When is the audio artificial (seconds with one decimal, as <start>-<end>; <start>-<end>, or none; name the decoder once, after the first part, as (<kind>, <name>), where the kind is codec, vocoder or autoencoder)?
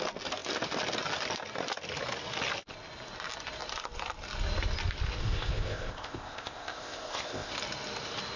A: 5.2-7.5 (codec, ZipCodec)